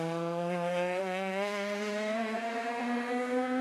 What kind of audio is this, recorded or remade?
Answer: remade